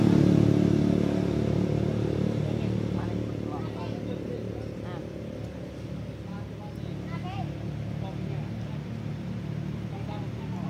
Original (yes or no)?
yes